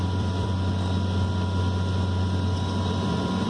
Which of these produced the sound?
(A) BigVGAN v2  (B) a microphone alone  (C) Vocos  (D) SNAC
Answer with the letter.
A